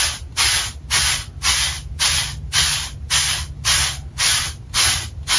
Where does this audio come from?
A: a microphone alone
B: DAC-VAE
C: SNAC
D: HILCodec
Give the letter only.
A